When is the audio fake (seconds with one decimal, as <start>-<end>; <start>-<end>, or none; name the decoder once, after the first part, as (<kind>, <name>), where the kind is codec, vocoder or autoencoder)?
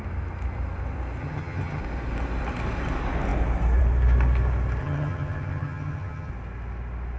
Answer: 1.2-1.8 (vocoder, HiFi-GAN); 4.8-6.3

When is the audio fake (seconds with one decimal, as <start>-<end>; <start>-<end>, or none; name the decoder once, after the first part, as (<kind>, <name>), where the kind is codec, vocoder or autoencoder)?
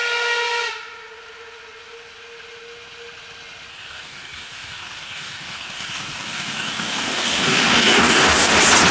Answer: 3.7-8.5 (codec, DAC)